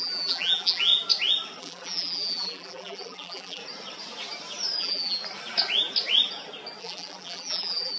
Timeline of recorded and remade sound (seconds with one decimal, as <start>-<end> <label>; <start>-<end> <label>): 0.0-0.9 remade; 0.9-1.6 recorded; 1.6-3.6 remade; 3.6-4.8 recorded; 4.8-5.2 remade; 5.2-6.8 recorded; 6.8-8.0 remade